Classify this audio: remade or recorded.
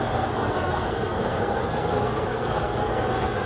remade